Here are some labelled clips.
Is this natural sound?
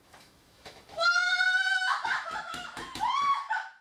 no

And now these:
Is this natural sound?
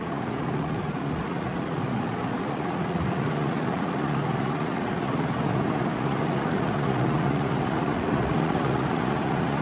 no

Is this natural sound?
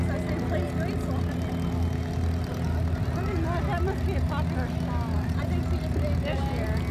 yes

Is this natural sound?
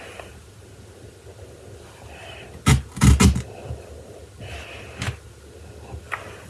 yes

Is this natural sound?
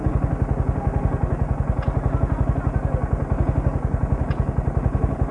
yes